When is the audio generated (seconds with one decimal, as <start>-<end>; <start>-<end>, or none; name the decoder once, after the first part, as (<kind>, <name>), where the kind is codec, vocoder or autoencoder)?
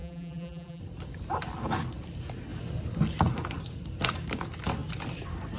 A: 0.0-0.8 (vocoder, BigVGAN v2)